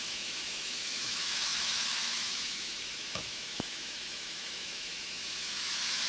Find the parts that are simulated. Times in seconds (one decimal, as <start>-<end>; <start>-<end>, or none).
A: 0.0-6.1